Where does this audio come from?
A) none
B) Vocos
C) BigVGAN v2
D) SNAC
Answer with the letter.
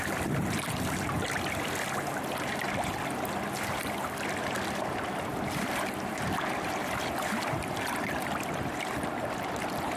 C